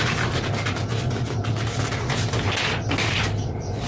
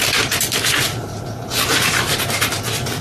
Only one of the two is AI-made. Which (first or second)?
second